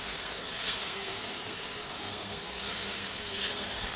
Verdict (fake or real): fake